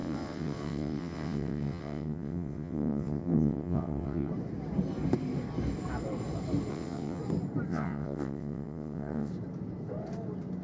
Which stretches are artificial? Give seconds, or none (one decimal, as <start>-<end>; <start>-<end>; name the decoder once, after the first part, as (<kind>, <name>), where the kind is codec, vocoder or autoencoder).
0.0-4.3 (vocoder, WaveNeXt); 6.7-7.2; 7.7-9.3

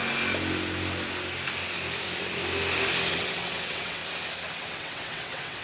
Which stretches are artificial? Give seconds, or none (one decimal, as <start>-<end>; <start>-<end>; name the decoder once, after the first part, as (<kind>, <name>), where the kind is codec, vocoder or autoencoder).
3.1-4.0 (vocoder, WaveNeXt); 4.6-5.6

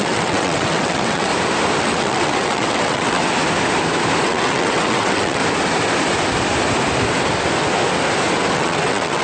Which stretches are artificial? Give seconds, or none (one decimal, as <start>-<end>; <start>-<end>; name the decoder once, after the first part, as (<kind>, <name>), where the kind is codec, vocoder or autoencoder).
0.0-1.3 (vocoder, WaveNeXt); 1.8-3.2; 4.2-5.4; 8.5-9.2

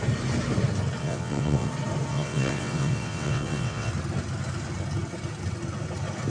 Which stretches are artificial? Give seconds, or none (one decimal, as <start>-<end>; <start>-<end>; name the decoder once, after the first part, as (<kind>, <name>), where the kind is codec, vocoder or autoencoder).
1.0-1.7 (vocoder, WaveNeXt); 2.1-3.9

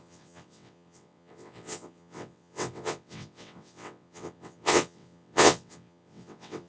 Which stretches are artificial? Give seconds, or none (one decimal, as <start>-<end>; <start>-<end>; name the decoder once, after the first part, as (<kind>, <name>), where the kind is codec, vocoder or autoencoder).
0.0-6.7 (vocoder, WaveNeXt)

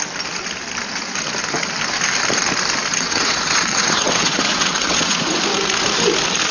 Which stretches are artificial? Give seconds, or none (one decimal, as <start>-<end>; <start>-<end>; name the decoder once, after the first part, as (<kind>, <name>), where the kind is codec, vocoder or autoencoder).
2.9-5.4 (vocoder, WaveNeXt)

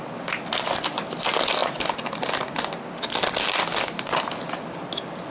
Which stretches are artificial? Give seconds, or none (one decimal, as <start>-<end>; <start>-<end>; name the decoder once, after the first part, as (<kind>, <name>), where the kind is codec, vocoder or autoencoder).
none

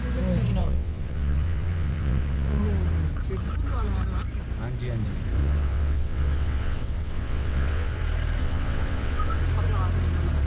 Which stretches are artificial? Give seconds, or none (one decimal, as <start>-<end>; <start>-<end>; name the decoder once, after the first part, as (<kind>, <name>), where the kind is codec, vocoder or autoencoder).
0.6-2.6 (vocoder, WaveNeXt); 5.4-8.0; 8.4-9.4